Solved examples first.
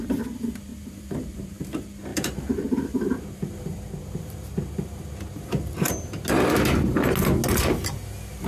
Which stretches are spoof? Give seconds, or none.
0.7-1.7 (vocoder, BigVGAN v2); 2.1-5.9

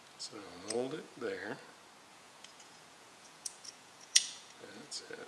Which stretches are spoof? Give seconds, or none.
0.4-1.2 (vocoder, Vocos); 2.1-5.3

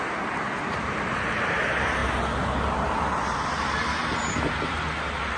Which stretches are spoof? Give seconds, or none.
none

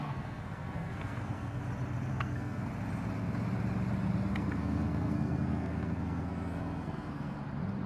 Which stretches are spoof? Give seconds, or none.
0.0-1.6 (codec, SNAC); 2.1-2.7; 4.3-7.4